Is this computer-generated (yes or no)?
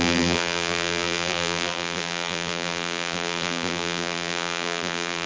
yes